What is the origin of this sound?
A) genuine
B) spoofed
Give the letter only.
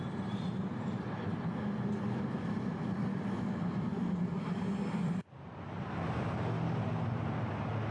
A